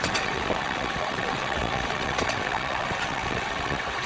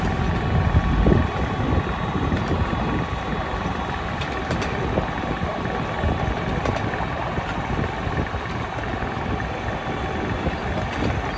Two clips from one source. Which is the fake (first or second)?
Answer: first